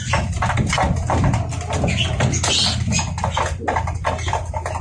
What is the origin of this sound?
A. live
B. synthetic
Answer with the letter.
A